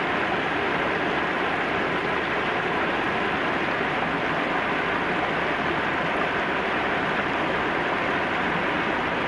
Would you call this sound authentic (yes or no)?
yes